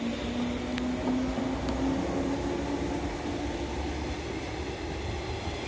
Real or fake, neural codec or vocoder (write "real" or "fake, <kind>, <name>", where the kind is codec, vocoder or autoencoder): real